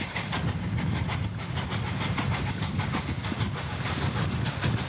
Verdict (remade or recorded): recorded